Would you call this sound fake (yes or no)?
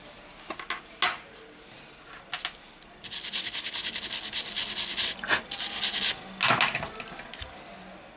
no